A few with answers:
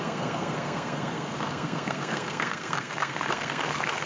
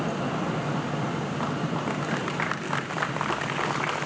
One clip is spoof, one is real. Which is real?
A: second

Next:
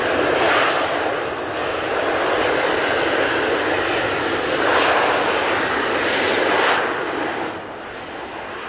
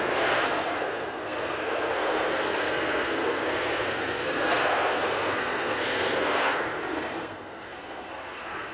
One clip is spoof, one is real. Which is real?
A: first